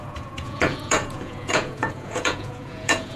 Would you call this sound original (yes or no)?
no